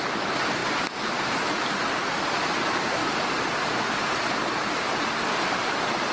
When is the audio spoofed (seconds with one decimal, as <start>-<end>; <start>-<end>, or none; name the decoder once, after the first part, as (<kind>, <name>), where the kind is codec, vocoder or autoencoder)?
none